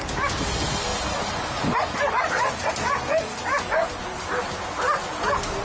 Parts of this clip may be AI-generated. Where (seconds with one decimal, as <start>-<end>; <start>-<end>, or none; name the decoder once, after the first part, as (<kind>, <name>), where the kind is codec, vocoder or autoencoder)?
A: 0.9-2.7 (vocoder, BigVGAN v2)